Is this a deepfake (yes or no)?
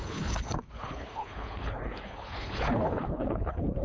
yes